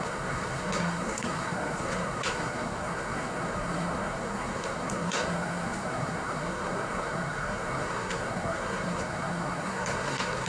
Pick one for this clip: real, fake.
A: fake